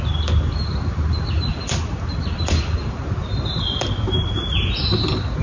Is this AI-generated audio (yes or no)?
no